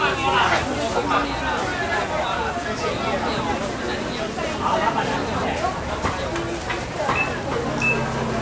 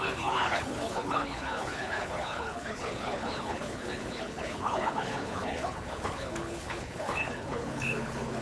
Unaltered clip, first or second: first